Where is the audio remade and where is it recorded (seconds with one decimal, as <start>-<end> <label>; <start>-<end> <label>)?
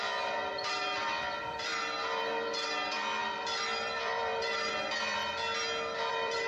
0.0-5.2 remade; 5.2-6.1 recorded; 6.1-6.5 remade